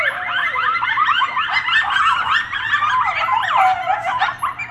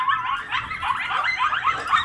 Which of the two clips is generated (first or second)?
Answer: first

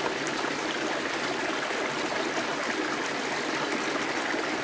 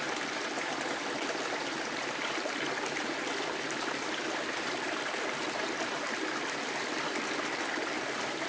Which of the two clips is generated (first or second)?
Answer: second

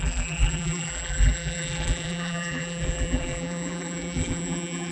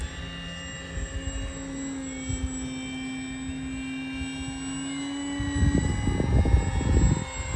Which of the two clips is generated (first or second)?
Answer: first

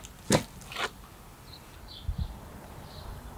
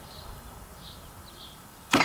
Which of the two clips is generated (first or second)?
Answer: second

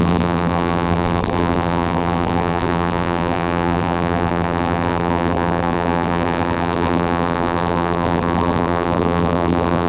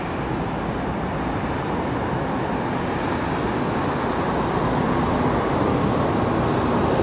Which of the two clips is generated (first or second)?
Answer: first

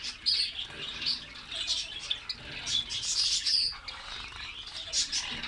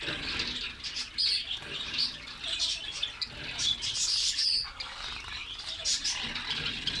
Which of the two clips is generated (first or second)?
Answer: second